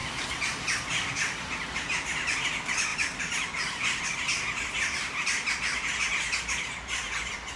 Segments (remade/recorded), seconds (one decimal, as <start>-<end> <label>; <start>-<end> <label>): 0.0-7.6 recorded